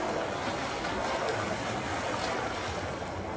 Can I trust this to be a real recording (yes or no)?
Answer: yes